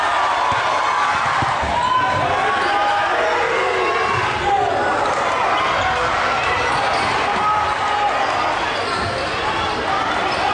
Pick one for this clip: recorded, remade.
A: recorded